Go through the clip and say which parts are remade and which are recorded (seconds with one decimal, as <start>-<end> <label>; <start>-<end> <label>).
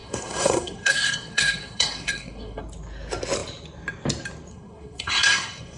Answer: 0.0-2.6 remade; 2.6-4.5 recorded; 4.5-5.8 remade